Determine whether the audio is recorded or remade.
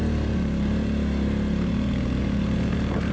recorded